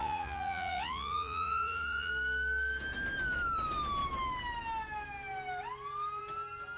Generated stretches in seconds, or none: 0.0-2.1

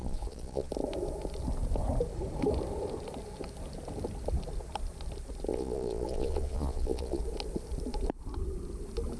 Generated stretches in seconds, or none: 0.0-0.7; 5.5-7.2